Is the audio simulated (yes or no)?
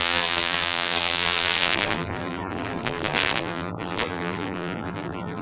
yes